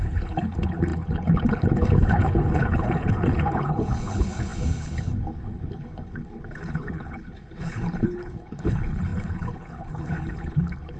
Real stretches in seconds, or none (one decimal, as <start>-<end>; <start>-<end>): none